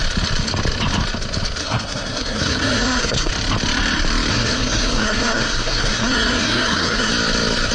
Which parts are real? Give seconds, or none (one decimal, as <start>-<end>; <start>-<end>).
0.0-1.6; 3.3-4.3; 7.1-7.7